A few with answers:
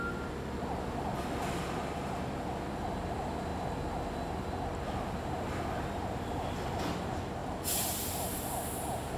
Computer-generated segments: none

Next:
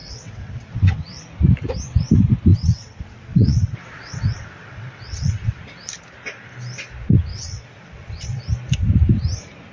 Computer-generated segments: 0.0-1.2 (vocoder, WaveNeXt); 2.5-5.6; 7.3-8.4

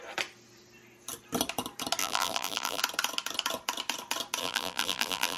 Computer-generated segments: 2.0-2.8 (vocoder, BigVGAN v2); 4.4-5.4

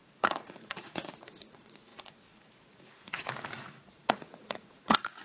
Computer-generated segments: 0.0-5.2 (vocoder, Vocos)

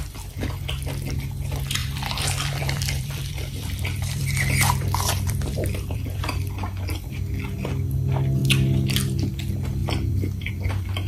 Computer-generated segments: 1.8-6.2 (vocoder, BigVGAN v2); 9.8-10.5

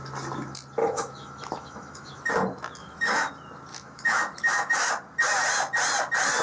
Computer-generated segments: 0.8-2.3 (autoencoder, DAC-VAE); 2.8-3.3; 3.7-4.9

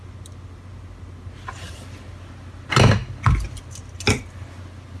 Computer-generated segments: none

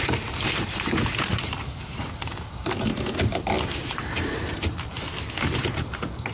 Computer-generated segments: 1.1-2.1 (vocoder, BigVGAN v2); 3.8-4.3